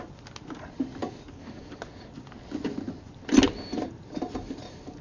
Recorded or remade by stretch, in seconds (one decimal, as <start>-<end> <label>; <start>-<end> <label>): 0.0-1.0 recorded; 1.0-1.8 remade; 1.8-5.0 recorded